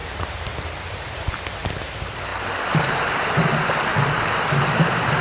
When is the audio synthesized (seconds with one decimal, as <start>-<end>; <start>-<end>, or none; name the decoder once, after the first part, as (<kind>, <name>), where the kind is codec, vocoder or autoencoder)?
0.0-5.2 (vocoder, BigVGAN v2)